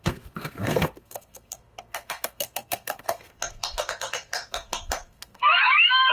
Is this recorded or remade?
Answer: remade